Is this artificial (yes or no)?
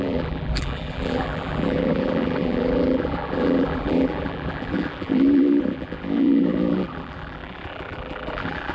yes